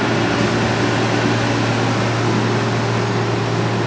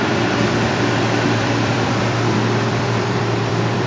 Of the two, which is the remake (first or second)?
second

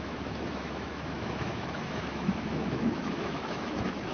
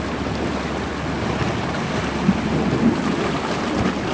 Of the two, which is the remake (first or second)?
first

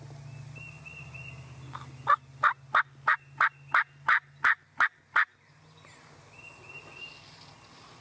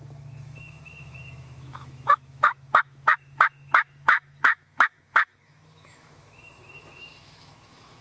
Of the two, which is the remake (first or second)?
second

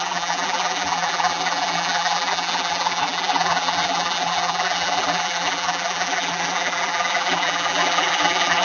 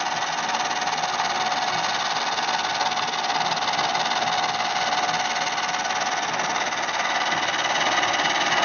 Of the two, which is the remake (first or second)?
first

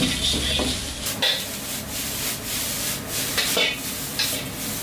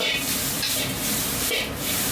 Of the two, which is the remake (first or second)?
second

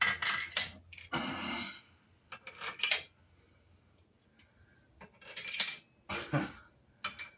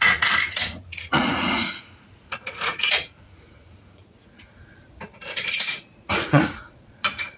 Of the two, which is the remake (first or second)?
second